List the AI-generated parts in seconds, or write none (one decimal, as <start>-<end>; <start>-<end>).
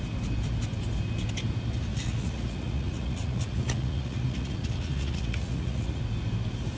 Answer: 1.9-6.0